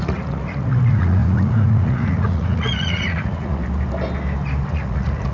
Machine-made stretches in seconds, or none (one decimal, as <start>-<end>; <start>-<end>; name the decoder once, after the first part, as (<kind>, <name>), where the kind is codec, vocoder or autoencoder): 0.0-3.6 (vocoder, Vocos); 4.7-5.3